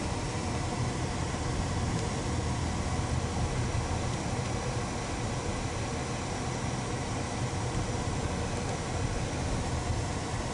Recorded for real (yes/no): yes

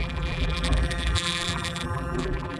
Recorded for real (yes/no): no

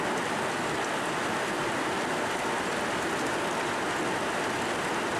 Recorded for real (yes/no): yes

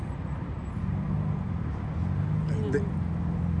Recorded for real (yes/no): yes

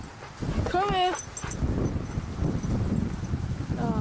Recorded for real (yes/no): yes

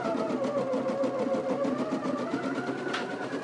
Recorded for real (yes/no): yes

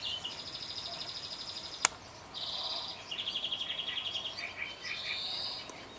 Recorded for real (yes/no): yes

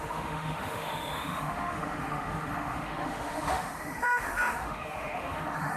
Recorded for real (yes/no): no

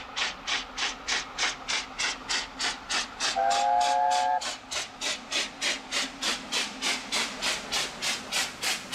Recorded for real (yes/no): yes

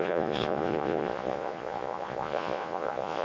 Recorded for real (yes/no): no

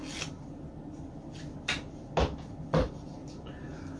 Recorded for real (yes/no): yes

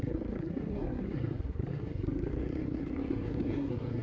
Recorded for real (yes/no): no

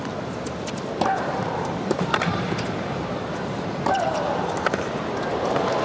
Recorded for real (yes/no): no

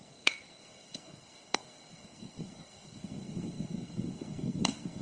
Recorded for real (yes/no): no